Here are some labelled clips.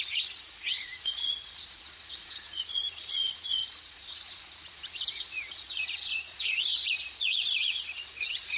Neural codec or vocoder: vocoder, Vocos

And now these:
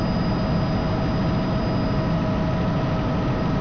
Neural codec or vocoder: none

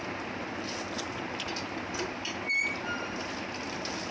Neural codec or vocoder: none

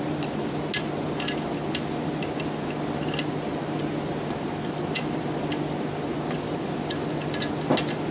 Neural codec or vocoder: none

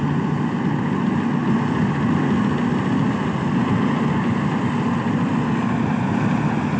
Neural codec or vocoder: none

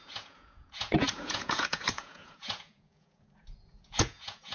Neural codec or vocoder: vocoder, Vocos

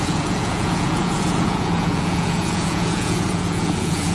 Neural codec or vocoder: vocoder, Vocos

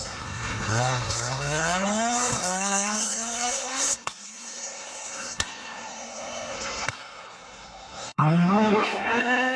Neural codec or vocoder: codec, SNAC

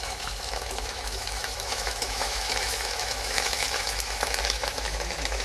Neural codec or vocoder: autoencoder, DAC-VAE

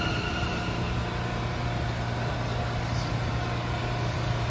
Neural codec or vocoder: none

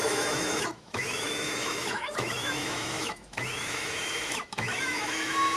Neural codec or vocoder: autoencoder, DAC-VAE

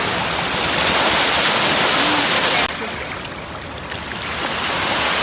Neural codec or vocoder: none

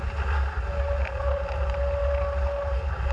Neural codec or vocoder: none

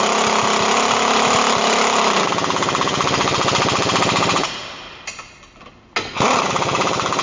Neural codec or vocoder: none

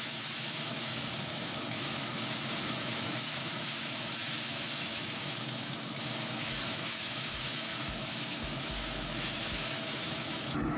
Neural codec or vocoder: autoencoder, DAC-VAE